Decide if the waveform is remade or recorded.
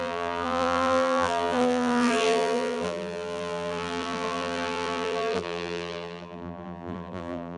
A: remade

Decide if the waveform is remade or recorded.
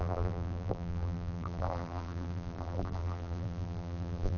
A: remade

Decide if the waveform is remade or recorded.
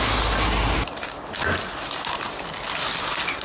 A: recorded